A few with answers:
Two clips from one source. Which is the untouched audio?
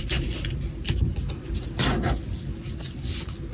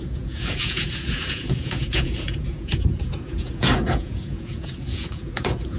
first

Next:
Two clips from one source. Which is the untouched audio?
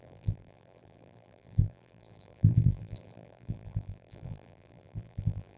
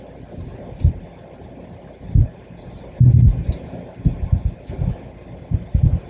second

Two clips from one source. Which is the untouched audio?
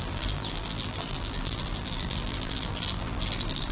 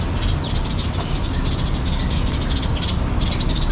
second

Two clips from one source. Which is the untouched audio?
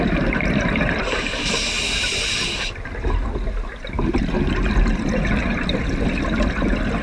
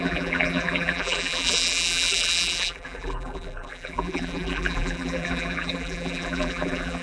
first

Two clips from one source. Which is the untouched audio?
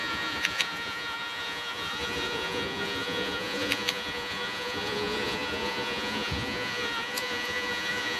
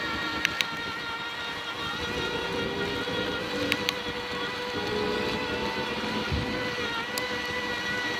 second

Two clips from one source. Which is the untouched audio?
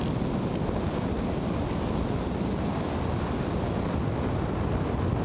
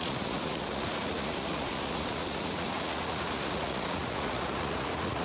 first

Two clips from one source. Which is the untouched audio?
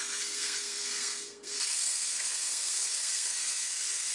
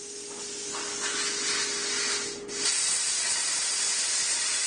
second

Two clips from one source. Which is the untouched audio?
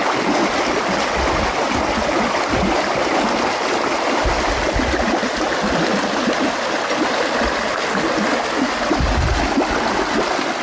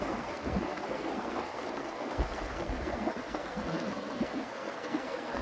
first